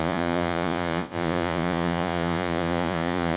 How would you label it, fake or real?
fake